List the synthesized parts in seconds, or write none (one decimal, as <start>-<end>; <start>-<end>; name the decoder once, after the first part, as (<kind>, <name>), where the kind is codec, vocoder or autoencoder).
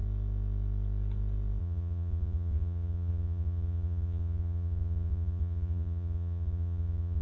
1.6-7.2 (vocoder, Vocos)